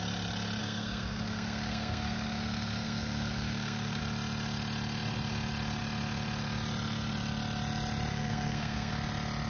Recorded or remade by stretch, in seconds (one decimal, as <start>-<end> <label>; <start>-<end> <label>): 0.0-0.6 recorded; 0.6-4.0 remade; 4.0-8.1 recorded; 8.1-8.9 remade; 8.9-9.5 recorded

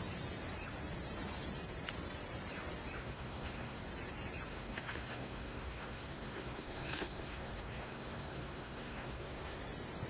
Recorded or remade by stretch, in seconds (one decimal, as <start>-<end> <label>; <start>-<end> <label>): 0.0-3.0 recorded; 3.0-3.8 remade; 3.8-4.5 recorded; 4.5-9.6 remade; 9.6-10.1 recorded

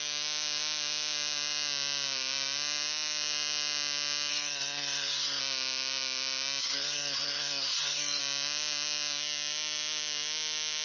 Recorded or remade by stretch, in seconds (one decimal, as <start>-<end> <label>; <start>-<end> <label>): 0.0-4.3 recorded; 4.3-5.4 remade; 5.4-6.6 recorded; 6.6-8.2 remade; 8.2-10.8 recorded

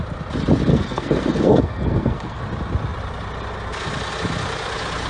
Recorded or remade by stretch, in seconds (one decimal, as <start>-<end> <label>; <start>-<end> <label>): 0.0-0.7 recorded; 0.7-2.4 remade; 2.4-5.1 recorded

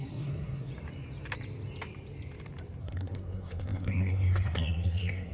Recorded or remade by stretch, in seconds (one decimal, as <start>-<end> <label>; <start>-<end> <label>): 0.0-0.7 remade; 0.7-2.8 recorded; 2.8-5.3 remade

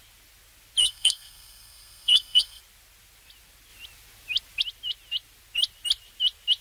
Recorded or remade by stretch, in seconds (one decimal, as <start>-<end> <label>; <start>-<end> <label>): 0.0-0.8 recorded; 0.8-2.6 remade; 2.6-6.6 recorded